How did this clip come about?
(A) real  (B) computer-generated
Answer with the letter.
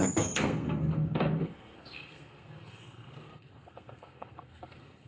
B